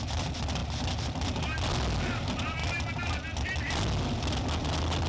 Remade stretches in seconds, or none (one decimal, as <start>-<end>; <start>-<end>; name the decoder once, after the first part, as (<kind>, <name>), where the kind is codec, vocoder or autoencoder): none